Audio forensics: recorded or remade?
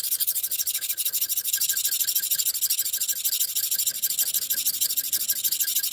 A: recorded